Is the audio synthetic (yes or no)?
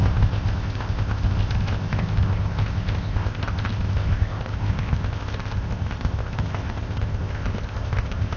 yes